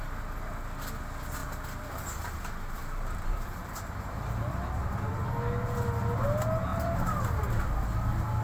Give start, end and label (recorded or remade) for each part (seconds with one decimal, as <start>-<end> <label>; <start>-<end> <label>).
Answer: 0.0-1.4 recorded; 1.4-4.5 remade; 4.5-6.7 recorded; 6.7-7.2 remade; 7.2-8.4 recorded